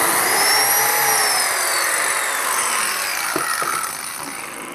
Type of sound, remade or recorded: recorded